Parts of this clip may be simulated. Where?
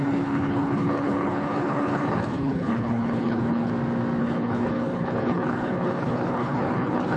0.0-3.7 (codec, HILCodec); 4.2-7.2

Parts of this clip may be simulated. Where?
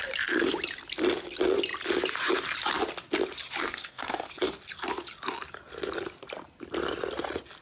3.6-4.3 (codec, SNAC)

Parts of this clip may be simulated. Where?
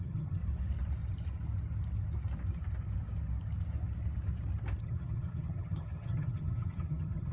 0.0-0.4 (vocoder, HiFi-GAN); 4.8-7.3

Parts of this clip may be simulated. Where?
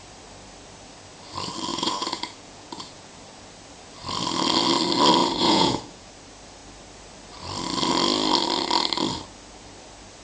1.7-3.1 (vocoder, Vocos); 5.2-6.1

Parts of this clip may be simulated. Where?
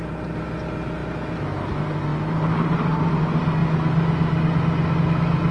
none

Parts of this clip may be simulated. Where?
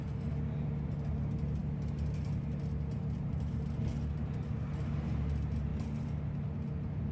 none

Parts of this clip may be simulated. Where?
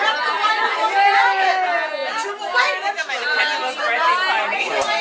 none